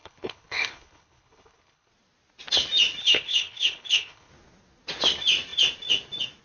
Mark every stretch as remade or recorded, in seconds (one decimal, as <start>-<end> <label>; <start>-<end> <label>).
0.0-1.9 remade; 1.9-3.0 recorded; 3.0-4.3 remade; 4.3-6.4 recorded